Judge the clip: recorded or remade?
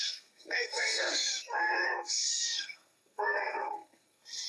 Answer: remade